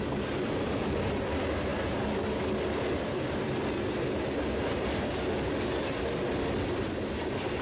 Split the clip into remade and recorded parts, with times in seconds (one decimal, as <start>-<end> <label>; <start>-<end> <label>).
0.0-7.6 recorded